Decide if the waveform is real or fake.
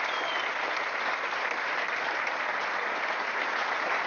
real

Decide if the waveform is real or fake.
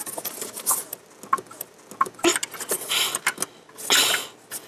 real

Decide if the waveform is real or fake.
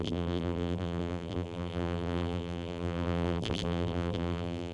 fake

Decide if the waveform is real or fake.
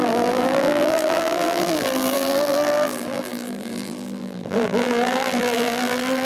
fake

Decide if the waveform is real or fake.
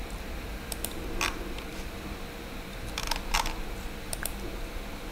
fake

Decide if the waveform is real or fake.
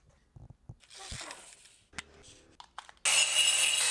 real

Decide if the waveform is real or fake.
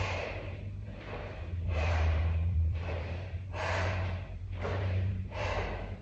fake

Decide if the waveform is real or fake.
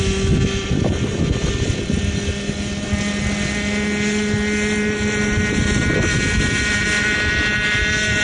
real